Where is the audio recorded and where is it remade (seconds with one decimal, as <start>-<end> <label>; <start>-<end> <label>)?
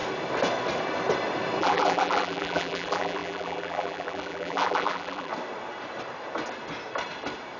0.0-1.6 recorded; 1.6-5.3 remade; 5.3-7.6 recorded